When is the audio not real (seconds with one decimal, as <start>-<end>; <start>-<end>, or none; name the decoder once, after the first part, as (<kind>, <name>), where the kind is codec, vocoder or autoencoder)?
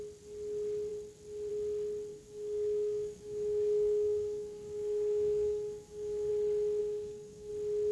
2.1-6.3 (codec, DAC); 6.8-7.5